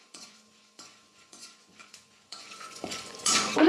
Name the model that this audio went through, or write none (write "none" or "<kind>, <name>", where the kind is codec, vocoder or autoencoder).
vocoder, Vocos